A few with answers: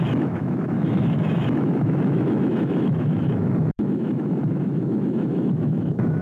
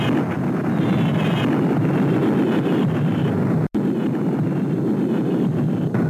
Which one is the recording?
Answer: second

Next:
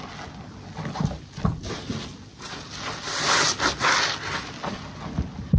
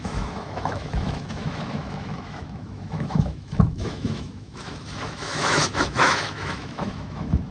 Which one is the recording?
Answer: first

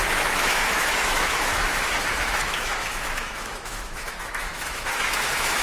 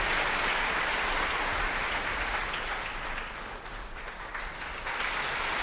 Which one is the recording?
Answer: second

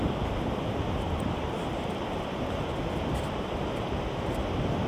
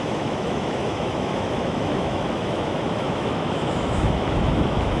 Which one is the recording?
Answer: first